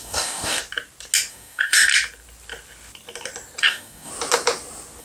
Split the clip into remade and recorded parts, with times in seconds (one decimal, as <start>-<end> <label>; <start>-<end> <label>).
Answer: 0.0-0.6 remade; 0.6-1.3 recorded; 1.3-1.9 remade; 1.9-3.6 recorded; 3.6-4.1 remade; 4.1-5.0 recorded